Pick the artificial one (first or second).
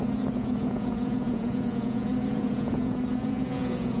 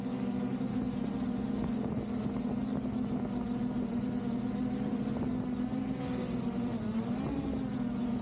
first